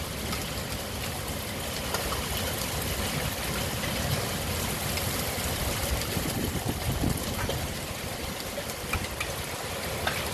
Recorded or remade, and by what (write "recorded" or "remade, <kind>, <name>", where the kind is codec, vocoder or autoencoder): recorded